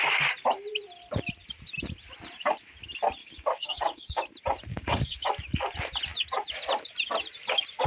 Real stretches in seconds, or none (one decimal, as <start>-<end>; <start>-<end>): 0.0-3.2; 4.2-4.7; 5.3-7.9